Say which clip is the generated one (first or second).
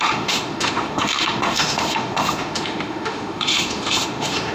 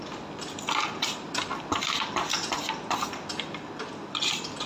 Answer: first